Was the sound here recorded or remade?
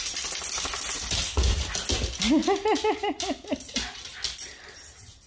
recorded